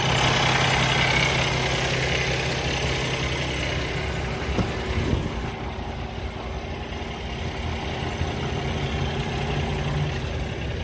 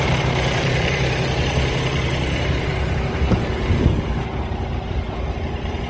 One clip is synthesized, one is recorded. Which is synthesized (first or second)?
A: second